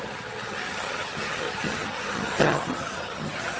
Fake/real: fake